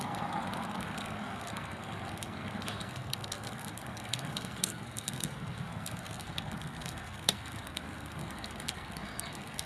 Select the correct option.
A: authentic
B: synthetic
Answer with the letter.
B